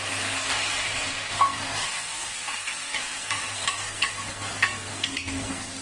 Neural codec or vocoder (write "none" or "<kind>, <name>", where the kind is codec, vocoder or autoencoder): codec, SNAC